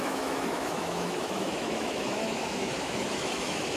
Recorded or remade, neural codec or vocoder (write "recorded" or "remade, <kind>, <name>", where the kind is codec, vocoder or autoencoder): remade, autoencoder, DAC-VAE